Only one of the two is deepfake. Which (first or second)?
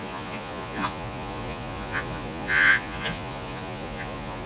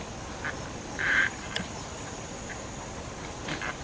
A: first